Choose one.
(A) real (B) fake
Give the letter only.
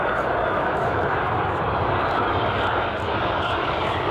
B